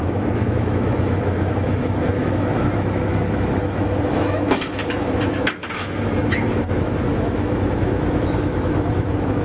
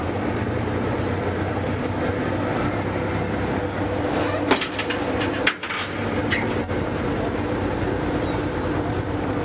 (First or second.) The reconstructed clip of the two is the first